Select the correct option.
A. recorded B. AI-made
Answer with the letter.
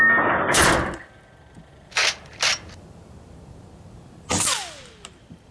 A